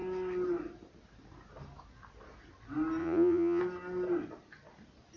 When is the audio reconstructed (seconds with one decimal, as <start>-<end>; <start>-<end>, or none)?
3.0-3.6